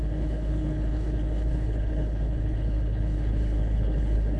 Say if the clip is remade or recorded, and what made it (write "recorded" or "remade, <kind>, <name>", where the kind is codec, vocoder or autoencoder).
remade, codec, HILCodec